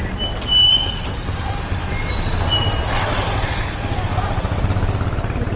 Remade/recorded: recorded